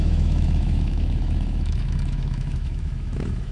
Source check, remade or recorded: remade